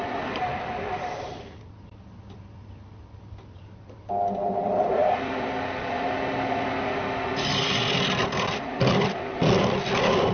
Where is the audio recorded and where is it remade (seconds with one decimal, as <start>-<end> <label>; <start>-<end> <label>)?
0.0-10.3 recorded